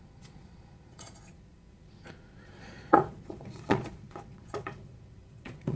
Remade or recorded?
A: remade